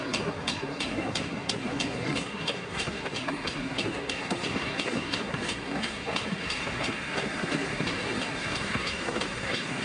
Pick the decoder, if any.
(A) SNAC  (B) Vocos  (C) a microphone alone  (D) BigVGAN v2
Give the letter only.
A